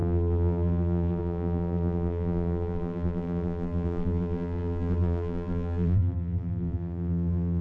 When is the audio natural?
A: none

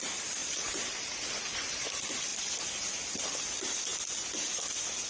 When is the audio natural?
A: 0.0-5.1

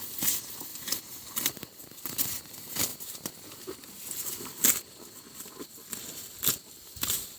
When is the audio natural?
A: 0.0-7.4

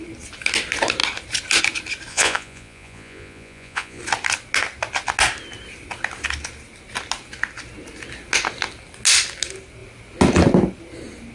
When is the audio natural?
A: 0.0-2.1; 4.0-11.3